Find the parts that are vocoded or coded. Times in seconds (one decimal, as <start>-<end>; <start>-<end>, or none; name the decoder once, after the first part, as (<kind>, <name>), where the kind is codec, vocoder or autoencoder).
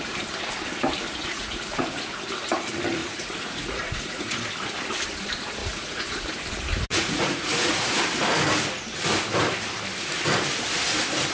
1.2-2.2 (vocoder, Vocos); 3.0-4.4; 5.6-6.2; 6.9-7.9